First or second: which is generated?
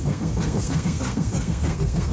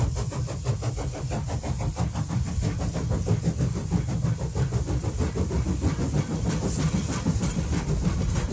first